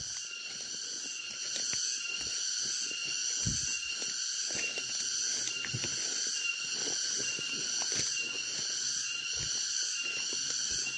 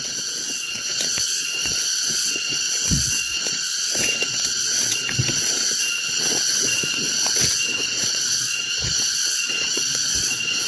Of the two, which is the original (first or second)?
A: first